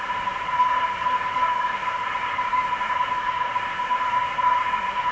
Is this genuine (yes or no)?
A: no